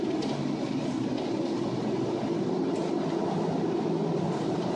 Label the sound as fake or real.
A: real